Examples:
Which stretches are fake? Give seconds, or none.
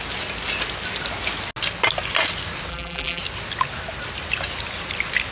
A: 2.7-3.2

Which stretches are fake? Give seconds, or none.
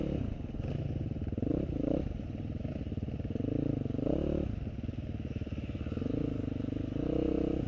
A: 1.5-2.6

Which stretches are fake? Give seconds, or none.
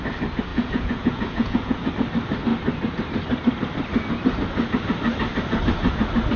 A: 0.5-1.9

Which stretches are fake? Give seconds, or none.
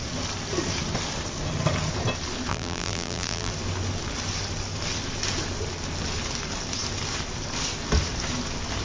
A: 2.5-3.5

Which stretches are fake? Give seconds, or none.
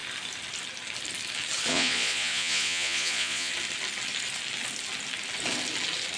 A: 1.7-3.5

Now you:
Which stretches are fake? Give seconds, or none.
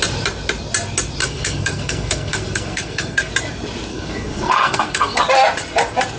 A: 1.2-3.3; 3.9-5.2